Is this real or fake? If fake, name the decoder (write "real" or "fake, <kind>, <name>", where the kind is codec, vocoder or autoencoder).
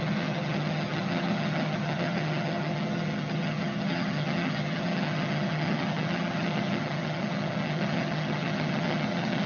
fake, vocoder, HiFi-GAN